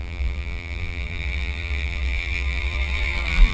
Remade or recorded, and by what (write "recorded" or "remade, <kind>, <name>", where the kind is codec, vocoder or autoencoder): remade, vocoder, BigVGAN v2